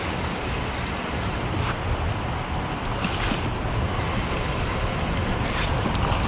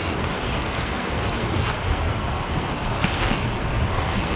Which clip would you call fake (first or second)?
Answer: second